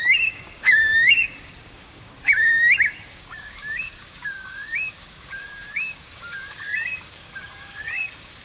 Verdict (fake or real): fake